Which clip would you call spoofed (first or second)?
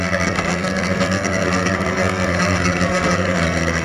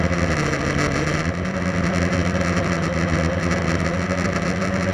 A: first